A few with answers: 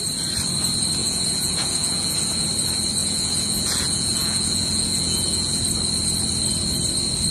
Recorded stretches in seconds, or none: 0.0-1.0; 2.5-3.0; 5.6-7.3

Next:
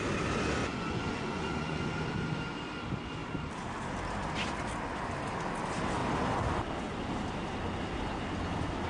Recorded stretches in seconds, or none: 0.0-0.6; 1.9-8.9

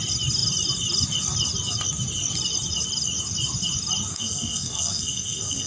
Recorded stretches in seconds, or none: 0.0-4.1

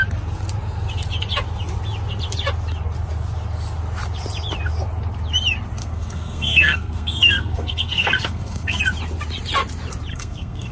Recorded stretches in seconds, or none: 0.0-5.8; 8.8-10.1

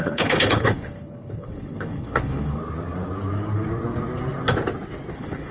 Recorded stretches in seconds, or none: 2.6-5.1

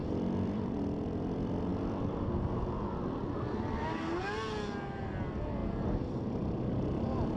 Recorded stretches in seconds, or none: 0.7-1.7; 2.3-7.4

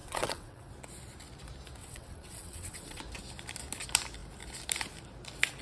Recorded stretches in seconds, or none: 0.7-1.8; 3.0-5.6

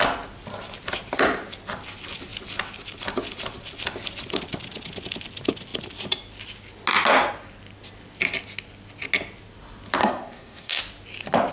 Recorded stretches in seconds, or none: 0.0-10.0; 10.8-11.5